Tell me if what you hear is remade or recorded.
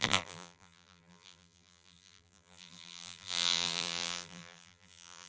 remade